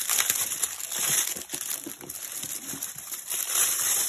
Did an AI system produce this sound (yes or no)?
yes